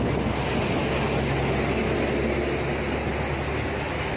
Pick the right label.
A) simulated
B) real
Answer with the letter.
B